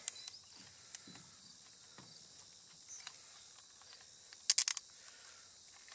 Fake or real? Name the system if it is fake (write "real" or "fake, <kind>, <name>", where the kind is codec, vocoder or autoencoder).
real